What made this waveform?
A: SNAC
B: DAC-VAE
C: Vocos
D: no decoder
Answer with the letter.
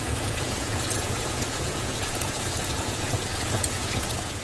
C